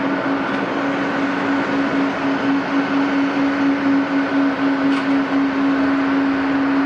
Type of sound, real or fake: real